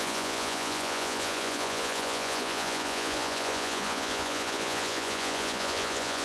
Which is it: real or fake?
fake